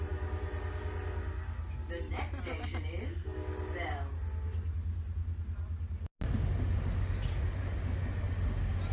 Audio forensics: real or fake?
real